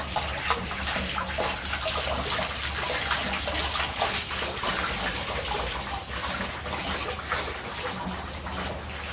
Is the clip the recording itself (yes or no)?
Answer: yes